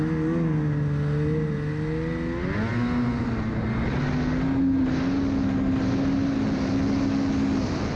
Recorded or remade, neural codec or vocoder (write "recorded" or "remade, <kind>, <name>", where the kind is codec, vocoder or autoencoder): recorded